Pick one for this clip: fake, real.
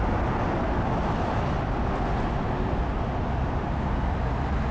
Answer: real